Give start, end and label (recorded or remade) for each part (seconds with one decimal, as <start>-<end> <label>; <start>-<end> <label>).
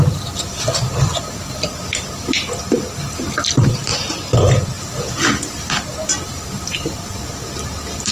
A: 0.0-6.1 recorded; 6.1-7.3 remade; 7.3-8.1 recorded